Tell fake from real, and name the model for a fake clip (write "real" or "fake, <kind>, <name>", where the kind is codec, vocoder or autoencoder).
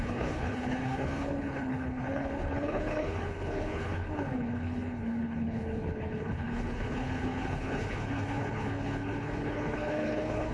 fake, codec, HILCodec